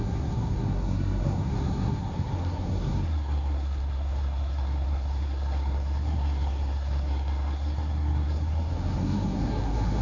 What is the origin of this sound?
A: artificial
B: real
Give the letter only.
A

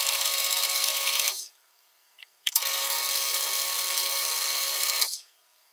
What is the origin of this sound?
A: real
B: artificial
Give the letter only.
B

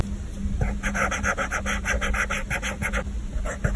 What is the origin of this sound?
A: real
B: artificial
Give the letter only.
A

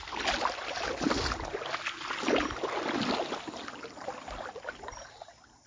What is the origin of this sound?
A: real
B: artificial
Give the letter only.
A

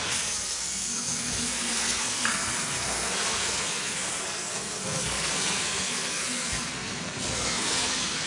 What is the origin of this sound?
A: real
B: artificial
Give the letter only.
B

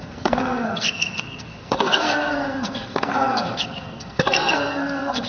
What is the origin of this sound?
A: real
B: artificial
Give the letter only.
B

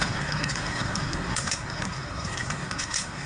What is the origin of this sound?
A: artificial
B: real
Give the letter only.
A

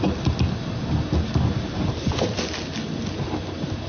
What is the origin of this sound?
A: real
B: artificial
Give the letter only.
A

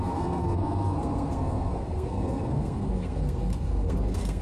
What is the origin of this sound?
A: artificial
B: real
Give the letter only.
A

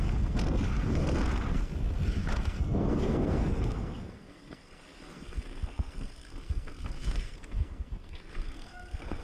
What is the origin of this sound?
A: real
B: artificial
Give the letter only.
B